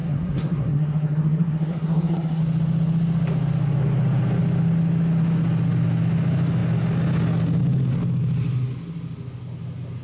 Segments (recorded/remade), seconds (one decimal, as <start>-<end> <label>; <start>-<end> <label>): 0.0-2.4 remade; 2.4-10.0 recorded